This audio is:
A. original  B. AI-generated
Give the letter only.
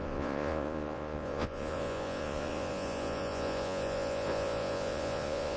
B